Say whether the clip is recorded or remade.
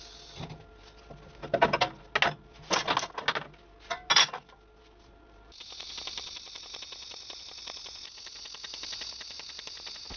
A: recorded